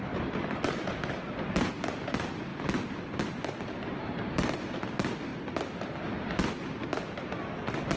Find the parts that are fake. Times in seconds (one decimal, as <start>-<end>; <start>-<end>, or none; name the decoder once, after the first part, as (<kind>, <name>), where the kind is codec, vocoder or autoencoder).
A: none